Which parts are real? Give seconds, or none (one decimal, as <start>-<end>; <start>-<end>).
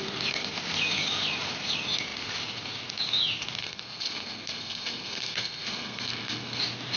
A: 0.0-3.6; 6.6-7.0